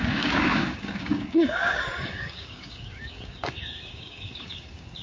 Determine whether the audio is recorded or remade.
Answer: remade